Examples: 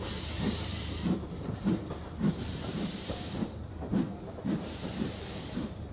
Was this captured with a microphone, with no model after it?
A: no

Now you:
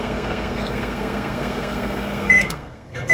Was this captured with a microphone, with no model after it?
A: no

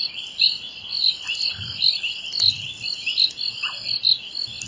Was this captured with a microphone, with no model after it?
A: yes